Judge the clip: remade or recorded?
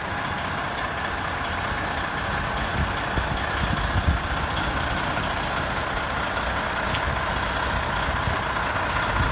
recorded